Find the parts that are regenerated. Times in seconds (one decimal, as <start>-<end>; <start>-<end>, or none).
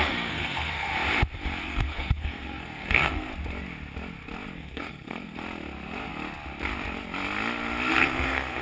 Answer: 0.0-0.9; 1.6-3.3; 4.5-5.4; 7.9-8.6